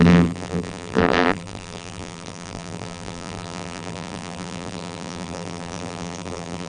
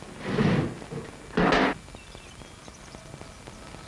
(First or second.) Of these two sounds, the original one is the second